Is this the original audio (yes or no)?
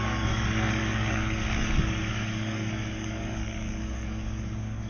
no